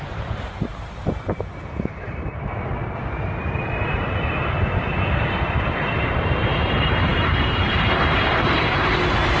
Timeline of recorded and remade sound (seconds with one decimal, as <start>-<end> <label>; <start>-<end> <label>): 0.0-2.8 remade; 2.8-5.6 recorded; 5.6-9.4 remade